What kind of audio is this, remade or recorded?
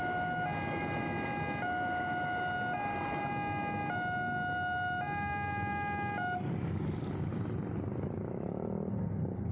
recorded